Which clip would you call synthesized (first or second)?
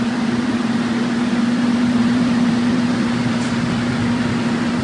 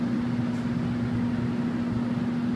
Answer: first